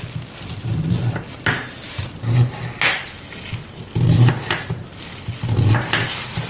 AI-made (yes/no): no